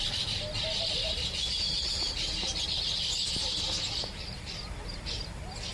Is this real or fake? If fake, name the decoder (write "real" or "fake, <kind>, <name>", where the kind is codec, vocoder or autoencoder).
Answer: real